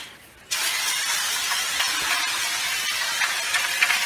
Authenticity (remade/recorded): recorded